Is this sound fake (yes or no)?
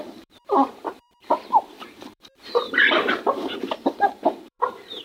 yes